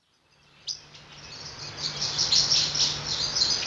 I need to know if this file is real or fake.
real